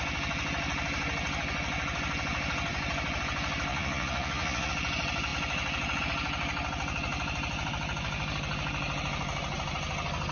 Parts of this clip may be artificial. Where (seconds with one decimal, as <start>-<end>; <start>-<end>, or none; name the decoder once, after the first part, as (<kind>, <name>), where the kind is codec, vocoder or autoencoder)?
3.7-4.7 (vocoder, Vocos)